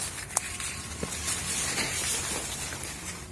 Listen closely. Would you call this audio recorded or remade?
recorded